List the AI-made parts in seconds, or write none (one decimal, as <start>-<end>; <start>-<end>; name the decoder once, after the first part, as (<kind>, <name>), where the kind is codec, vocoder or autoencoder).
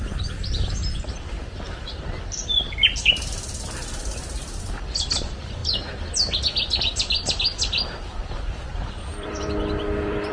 0.0-5.6 (vocoder, BigVGAN v2); 6.8-10.3